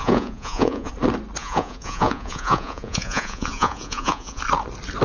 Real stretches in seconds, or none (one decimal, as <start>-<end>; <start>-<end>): 0.9-1.4; 4.4-5.0